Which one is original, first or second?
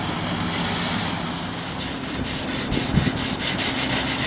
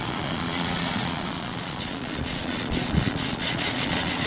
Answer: first